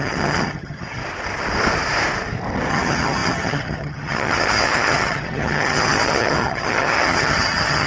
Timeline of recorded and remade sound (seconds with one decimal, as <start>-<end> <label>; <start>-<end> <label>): 0.0-1.0 remade; 1.0-2.7 recorded; 2.7-7.9 remade